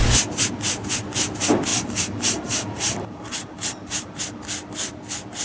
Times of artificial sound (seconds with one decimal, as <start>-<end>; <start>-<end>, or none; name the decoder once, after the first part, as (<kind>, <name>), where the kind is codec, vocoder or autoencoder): 1.7-4.2 (vocoder, BigVGAN v2)